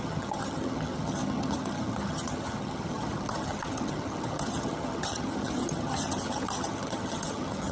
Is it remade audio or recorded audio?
remade